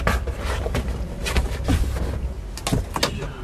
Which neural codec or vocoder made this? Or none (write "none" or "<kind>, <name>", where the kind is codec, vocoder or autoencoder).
none